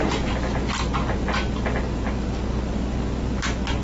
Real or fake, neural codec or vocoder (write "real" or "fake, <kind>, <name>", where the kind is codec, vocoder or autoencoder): real